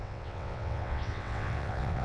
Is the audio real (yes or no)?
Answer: no